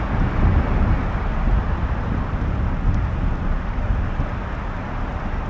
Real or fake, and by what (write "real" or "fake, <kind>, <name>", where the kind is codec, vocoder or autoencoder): real